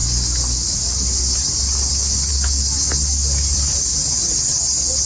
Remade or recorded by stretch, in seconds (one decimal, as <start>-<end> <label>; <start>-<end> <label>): 0.0-5.1 recorded